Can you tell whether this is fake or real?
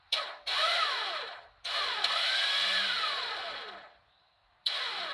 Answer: fake